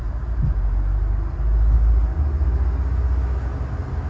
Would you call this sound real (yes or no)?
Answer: yes